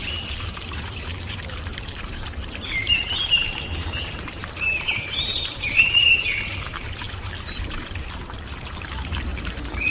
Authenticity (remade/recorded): remade